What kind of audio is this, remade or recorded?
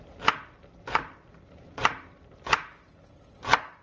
recorded